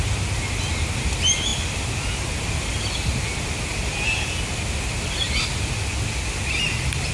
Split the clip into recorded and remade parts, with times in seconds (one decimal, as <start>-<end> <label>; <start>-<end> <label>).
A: 0.0-7.1 recorded